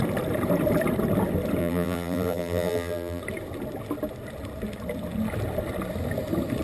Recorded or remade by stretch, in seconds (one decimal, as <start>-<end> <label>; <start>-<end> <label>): 0.0-1.6 recorded; 1.6-3.2 remade; 3.2-6.6 recorded